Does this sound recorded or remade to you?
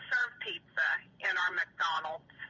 remade